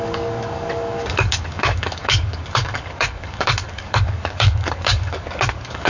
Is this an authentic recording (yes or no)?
no